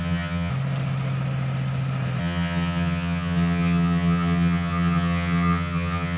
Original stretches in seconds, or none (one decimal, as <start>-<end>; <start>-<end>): 0.5-2.2